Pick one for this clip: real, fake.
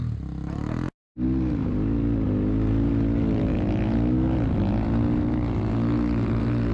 real